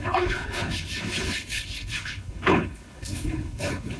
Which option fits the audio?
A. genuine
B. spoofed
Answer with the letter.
B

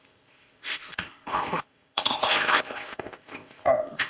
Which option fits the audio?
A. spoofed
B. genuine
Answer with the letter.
A